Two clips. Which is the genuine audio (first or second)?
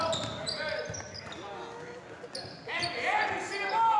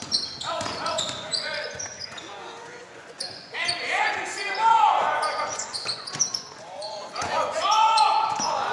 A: first